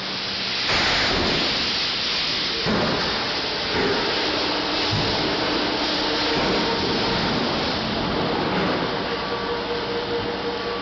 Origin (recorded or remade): recorded